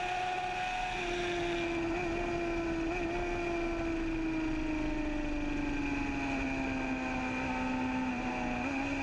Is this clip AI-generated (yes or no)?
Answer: no